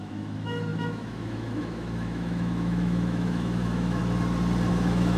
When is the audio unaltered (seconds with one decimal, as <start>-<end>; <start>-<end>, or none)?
4.0-4.7